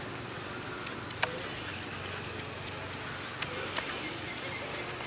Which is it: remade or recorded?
recorded